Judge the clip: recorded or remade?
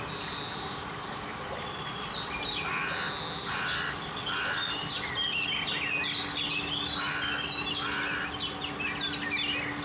recorded